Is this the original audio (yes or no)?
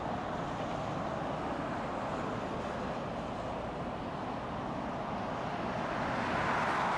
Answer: yes